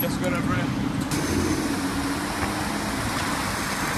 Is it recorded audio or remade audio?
recorded